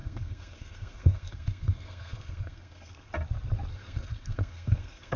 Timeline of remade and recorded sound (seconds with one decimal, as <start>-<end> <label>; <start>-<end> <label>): 0.0-3.1 remade; 3.1-3.7 recorded; 3.7-5.2 remade